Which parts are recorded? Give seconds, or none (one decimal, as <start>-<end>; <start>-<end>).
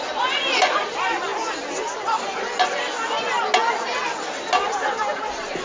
0.0-5.6